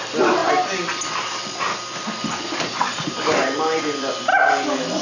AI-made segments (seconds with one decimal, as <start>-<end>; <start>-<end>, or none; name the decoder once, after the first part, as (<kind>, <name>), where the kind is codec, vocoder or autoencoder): none